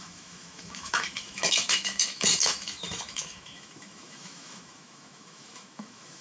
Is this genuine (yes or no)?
no